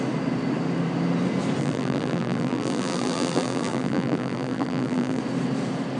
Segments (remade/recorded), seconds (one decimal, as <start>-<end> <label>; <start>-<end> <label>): 0.0-1.6 recorded; 1.6-5.2 remade; 5.2-6.0 recorded